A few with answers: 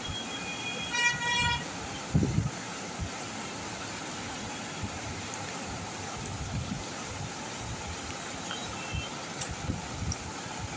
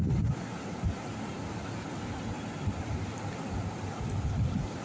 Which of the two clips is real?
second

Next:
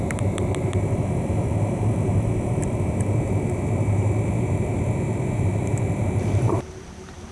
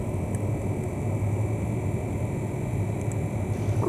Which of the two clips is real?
second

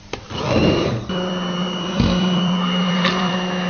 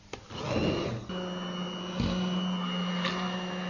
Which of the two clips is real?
second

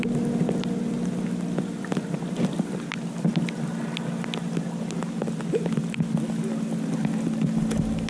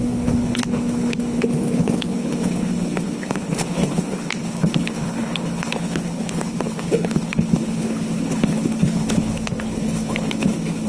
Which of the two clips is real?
first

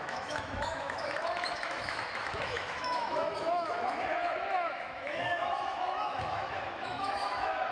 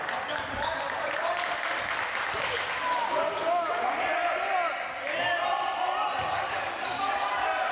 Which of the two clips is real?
second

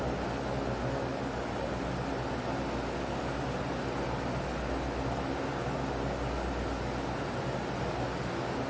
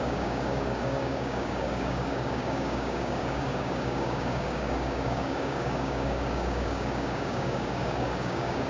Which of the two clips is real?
first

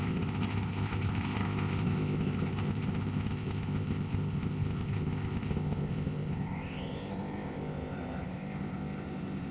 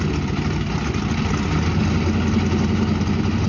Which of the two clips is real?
second